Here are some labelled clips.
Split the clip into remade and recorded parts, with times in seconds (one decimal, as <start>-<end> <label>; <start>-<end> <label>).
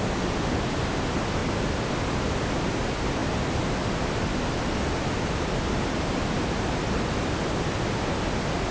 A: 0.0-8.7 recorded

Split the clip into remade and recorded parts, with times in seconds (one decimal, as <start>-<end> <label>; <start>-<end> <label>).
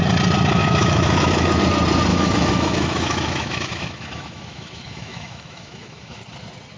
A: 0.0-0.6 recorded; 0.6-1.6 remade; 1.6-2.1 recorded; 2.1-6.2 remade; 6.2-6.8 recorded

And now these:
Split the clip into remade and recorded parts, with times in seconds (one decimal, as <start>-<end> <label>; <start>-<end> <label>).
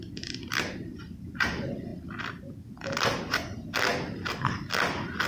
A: 0.0-5.3 recorded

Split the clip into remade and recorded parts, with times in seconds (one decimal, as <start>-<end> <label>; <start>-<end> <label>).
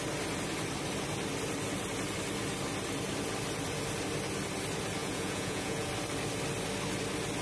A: 0.0-5.0 recorded; 5.0-5.9 remade; 5.9-7.4 recorded